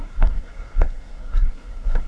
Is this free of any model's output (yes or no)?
no